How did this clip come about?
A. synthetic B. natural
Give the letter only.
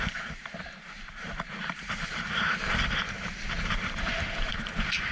A